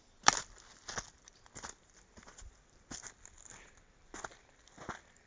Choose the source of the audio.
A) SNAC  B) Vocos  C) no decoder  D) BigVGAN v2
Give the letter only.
C